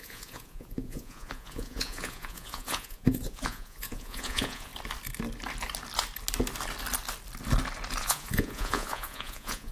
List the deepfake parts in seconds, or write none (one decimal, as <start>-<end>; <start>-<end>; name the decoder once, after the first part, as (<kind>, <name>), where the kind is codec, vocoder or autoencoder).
0.0-4.7 (vocoder, Vocos); 8.0-9.7